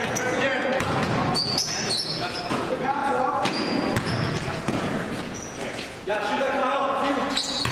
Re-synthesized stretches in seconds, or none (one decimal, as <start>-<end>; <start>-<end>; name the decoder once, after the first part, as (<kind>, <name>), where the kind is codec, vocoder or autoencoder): 0.0-7.7 (vocoder, Vocos)